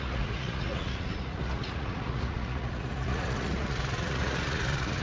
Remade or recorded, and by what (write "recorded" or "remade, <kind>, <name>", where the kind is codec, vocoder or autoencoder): remade, vocoder, Vocos